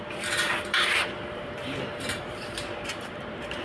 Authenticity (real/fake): fake